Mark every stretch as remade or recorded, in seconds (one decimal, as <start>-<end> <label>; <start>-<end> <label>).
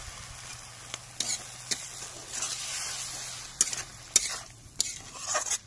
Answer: 0.0-5.7 recorded